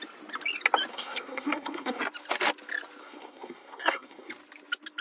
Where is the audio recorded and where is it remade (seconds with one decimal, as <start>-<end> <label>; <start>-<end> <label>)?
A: 0.0-0.9 recorded; 0.9-2.0 remade; 2.0-3.0 recorded; 3.0-4.3 remade; 4.3-5.0 recorded